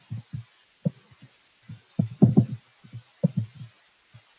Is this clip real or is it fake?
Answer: real